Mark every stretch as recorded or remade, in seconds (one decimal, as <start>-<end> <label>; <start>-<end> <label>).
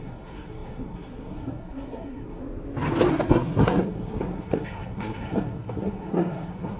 0.0-2.4 remade; 2.4-3.1 recorded; 3.1-6.8 remade